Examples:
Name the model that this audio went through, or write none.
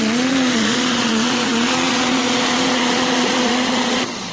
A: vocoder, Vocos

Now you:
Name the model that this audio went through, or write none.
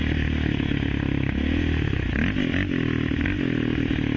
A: none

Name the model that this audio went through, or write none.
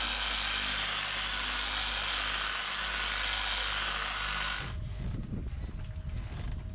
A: none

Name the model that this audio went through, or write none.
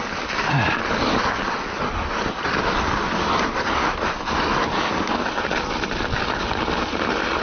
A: none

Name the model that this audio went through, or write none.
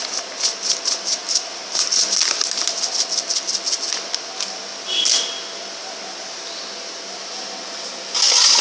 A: none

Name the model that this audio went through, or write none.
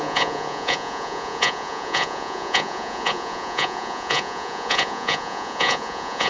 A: vocoder, Vocos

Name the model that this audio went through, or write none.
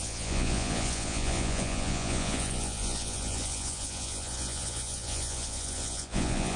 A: vocoder, Vocos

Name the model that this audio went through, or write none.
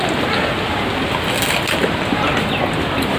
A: none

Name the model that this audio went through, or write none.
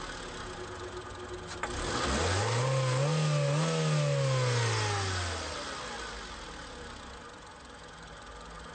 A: none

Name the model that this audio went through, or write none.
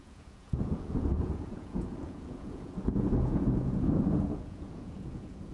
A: vocoder, Vocos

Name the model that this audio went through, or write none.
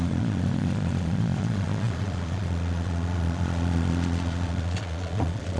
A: vocoder, Vocos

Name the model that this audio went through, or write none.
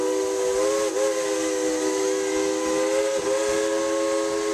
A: none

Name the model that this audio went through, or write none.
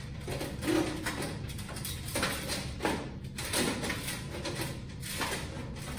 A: none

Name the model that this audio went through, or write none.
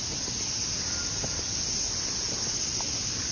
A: none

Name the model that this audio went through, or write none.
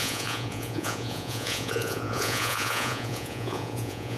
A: vocoder, Vocos